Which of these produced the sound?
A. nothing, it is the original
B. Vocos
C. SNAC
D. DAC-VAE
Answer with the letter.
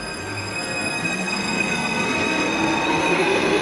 C